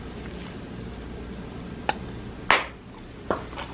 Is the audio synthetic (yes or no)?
no